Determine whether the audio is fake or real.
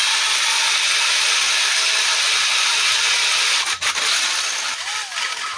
real